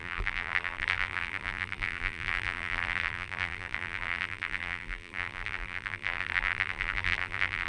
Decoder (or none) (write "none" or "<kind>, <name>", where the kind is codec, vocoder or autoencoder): vocoder, BigVGAN v2